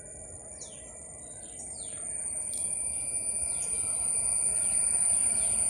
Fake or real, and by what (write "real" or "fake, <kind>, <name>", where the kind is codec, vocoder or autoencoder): real